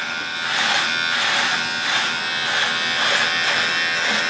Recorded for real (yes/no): yes